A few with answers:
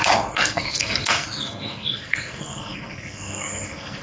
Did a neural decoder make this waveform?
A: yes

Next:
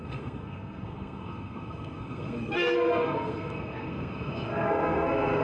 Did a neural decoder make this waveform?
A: yes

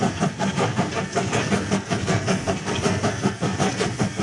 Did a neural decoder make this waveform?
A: yes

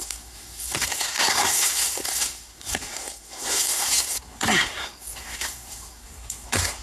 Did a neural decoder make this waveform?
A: yes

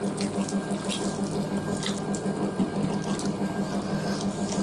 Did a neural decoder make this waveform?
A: no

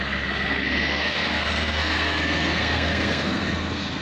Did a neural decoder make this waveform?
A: yes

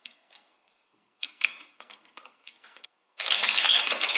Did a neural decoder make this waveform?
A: yes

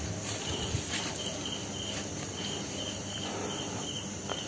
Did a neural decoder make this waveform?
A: no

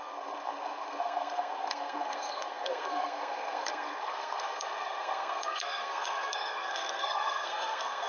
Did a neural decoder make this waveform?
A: yes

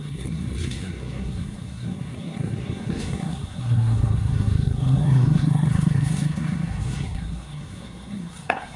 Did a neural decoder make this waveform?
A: yes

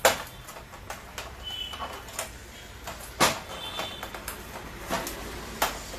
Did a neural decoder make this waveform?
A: no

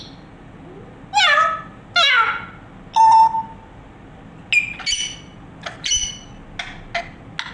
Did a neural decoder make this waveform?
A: no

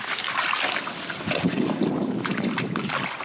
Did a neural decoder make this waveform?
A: no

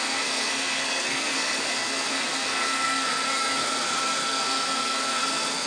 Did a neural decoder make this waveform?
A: yes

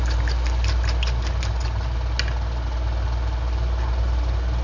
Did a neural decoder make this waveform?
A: no